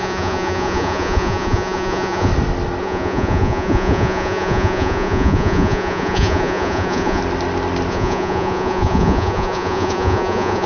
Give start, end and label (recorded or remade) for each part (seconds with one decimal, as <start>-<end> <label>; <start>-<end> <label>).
0.0-2.3 remade; 2.3-2.8 recorded; 2.8-7.2 remade; 7.2-7.9 recorded; 7.9-10.7 remade